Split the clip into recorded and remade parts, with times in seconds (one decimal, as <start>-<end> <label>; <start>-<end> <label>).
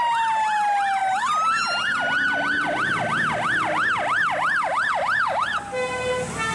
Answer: 0.0-6.5 recorded